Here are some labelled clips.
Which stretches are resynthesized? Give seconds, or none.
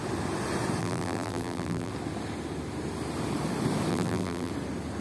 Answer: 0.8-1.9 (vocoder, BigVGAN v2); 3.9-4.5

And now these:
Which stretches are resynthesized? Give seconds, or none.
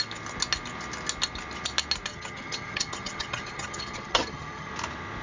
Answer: 2.1-4.7 (vocoder, HiFi-GAN)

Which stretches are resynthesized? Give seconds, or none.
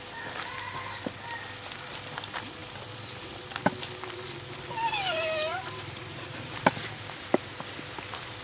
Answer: 5.5-7.6 (vocoder, BigVGAN v2)